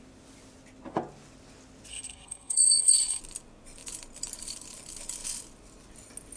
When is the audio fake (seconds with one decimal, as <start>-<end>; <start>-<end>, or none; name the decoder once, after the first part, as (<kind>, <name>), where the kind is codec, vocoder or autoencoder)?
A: 1.9-3.2 (codec, SNAC)